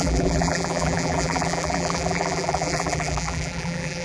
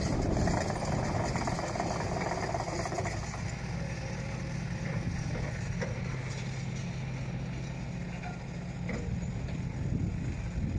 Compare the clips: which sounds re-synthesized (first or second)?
first